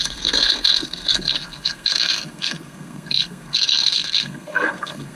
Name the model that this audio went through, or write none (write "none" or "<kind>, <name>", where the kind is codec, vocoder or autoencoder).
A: codec, SNAC